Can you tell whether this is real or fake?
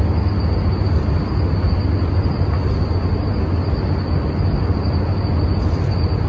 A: real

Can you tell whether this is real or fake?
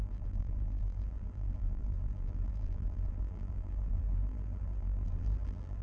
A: fake